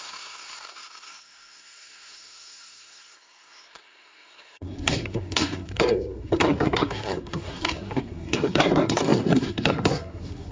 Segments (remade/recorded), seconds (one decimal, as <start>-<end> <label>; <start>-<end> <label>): 0.0-10.5 remade